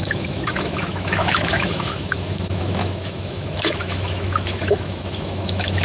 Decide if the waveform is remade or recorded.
remade